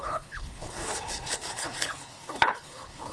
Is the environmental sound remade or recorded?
remade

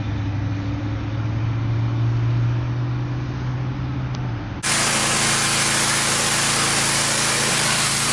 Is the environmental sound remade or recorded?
recorded